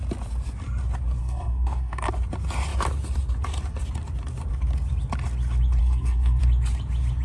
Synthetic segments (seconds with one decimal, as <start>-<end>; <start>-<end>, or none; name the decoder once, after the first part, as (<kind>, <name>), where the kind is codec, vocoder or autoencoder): 1.2-2.1 (codec, SNAC); 5.8-6.4